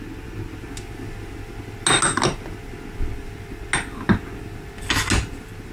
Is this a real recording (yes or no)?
yes